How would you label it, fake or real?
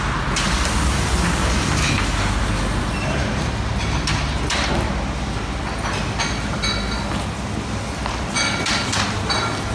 real